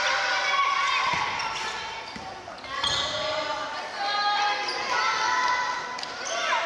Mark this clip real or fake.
real